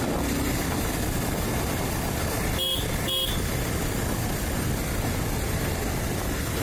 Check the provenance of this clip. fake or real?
real